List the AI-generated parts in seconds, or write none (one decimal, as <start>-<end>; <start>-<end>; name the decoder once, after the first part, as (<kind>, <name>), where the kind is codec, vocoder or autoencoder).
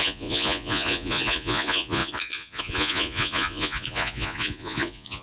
0.0-5.2 (vocoder, Vocos)